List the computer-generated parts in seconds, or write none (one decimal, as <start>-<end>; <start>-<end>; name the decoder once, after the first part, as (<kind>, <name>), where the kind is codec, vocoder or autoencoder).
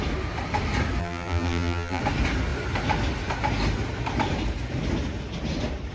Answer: 1.0-2.0 (vocoder, BigVGAN v2)